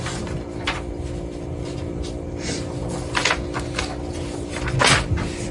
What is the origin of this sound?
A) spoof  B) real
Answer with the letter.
B